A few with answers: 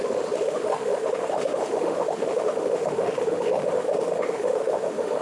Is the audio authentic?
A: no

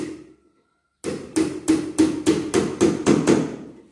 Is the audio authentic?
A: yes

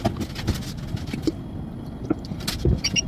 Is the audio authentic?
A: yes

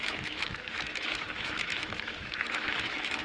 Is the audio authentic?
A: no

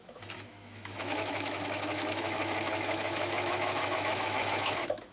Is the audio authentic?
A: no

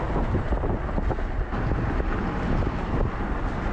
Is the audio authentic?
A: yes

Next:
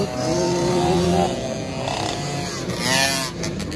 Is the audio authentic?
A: yes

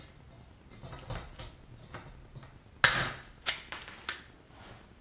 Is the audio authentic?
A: yes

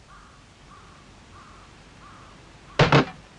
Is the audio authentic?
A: yes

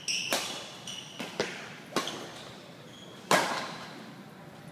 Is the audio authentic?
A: yes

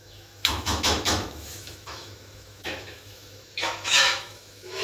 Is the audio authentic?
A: no